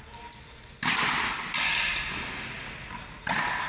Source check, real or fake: real